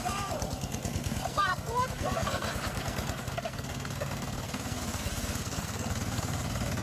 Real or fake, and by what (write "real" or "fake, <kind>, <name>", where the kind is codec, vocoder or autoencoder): fake, codec, SNAC